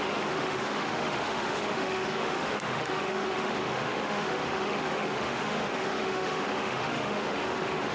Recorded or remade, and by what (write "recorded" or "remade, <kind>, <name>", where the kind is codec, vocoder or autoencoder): remade, autoencoder, DAC-VAE